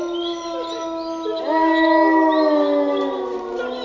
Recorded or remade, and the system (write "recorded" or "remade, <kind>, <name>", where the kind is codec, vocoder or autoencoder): recorded